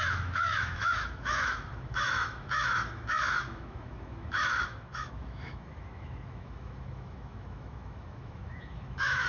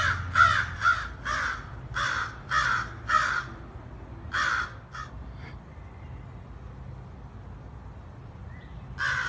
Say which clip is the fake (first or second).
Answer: first